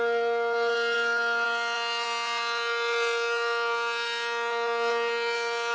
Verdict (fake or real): fake